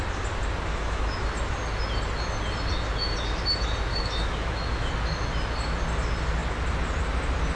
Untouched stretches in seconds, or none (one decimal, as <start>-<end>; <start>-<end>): 0.0-0.7; 1.3-3.9; 4.9-7.6